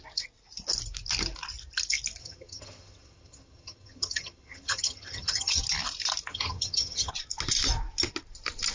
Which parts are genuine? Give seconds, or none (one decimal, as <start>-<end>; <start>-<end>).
0.0-2.2; 5.6-6.3; 7.1-8.7